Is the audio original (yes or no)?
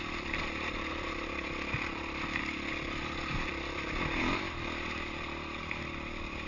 no